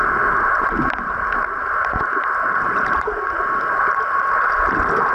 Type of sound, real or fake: real